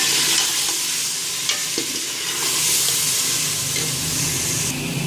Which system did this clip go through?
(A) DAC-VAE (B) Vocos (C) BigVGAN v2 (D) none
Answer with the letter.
D